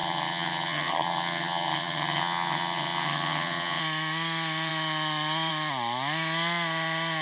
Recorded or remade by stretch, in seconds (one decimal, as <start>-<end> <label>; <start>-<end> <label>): 0.0-3.8 remade; 3.8-7.2 recorded